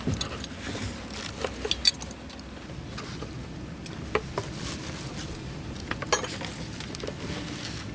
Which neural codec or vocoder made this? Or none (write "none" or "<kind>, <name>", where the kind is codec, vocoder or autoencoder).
none